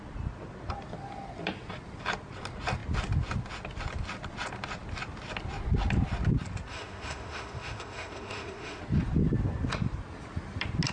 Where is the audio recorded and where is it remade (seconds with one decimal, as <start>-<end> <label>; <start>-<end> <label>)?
0.0-6.7 recorded; 6.7-8.8 remade; 8.8-10.9 recorded